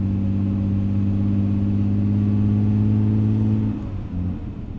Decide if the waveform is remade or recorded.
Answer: recorded